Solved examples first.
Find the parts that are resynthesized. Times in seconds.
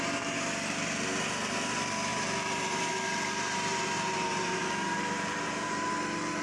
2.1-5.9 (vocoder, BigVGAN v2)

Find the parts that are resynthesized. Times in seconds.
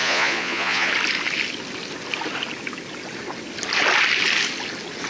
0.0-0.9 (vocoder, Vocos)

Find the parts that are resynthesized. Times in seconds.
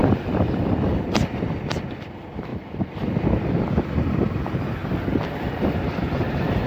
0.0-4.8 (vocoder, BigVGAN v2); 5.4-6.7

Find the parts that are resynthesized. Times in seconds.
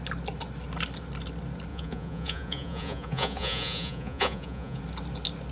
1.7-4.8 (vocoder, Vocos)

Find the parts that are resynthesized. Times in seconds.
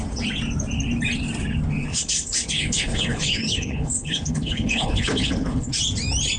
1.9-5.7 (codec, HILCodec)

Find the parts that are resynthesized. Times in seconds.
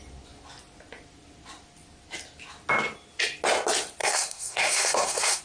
4.0-5.4 (codec, SNAC)